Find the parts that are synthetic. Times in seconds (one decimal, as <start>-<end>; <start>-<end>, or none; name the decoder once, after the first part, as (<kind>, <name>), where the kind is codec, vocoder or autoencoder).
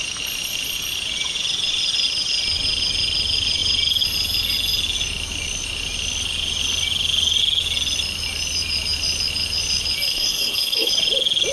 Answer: 10.1-10.9 (codec, SNAC)